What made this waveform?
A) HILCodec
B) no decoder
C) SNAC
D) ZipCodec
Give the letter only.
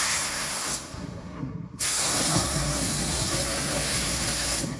C